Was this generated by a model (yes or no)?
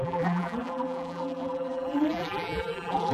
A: yes